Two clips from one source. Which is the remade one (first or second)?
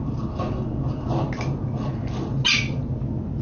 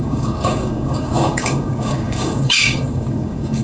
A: second